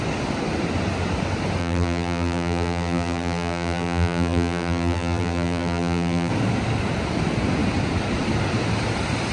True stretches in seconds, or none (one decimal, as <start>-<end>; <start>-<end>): 0.0-1.6; 6.3-9.3